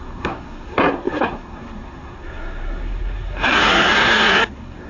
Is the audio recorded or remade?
remade